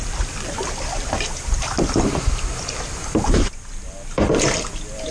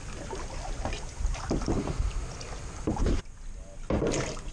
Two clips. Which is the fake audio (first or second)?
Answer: first